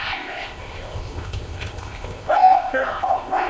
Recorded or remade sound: remade